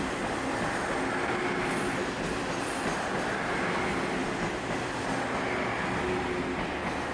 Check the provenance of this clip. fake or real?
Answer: real